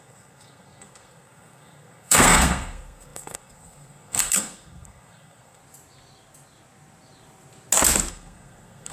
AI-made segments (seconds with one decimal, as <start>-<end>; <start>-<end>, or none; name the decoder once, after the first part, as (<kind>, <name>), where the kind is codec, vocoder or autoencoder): 0.0-5.6 (codec, SNAC); 8.1-8.9